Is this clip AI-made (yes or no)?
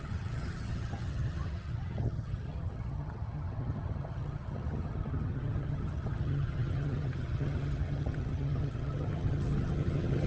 yes